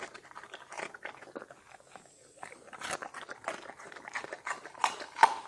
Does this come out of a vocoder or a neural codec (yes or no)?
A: no